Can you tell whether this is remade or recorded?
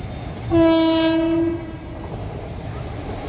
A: recorded